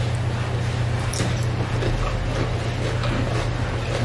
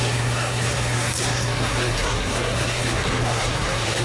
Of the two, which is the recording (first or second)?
first